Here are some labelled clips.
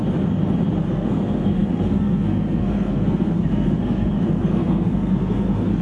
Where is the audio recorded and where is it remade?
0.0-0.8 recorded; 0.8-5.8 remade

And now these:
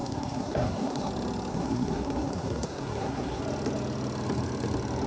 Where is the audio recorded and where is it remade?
0.0-1.1 remade; 1.1-1.5 recorded; 1.5-3.4 remade; 3.4-5.1 recorded

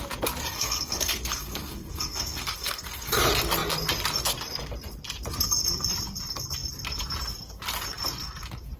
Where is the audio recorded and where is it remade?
0.0-0.4 recorded; 0.4-3.2 remade; 3.2-8.8 recorded

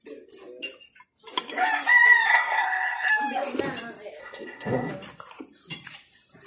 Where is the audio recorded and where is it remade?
0.0-2.3 recorded; 2.3-3.1 remade; 3.1-4.2 recorded; 4.2-4.9 remade; 4.9-6.5 recorded

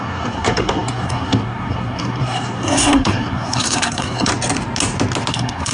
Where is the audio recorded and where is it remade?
0.0-4.3 remade; 4.3-5.3 recorded; 5.3-5.7 remade

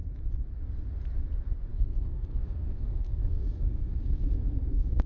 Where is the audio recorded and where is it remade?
0.0-1.7 recorded; 1.7-5.1 remade